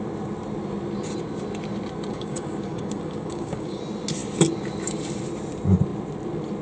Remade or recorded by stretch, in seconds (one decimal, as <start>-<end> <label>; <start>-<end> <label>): 0.0-2.1 recorded; 2.1-3.8 remade; 3.8-6.6 recorded